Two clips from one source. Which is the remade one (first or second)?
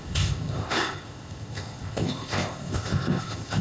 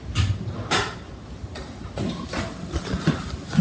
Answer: first